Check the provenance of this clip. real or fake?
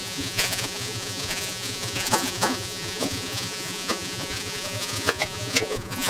fake